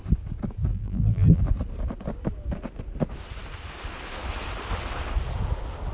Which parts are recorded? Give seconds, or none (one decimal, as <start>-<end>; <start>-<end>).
0.0-0.7; 1.4-5.9